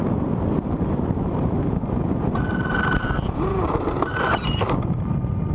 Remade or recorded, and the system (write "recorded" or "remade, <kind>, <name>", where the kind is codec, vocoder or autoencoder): remade, vocoder, BigVGAN v2